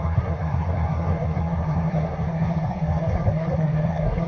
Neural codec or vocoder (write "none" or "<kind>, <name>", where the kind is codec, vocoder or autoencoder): codec, SNAC